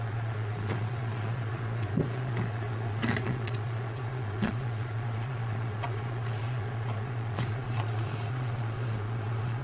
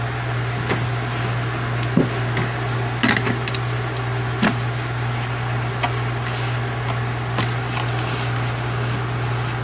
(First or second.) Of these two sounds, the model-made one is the first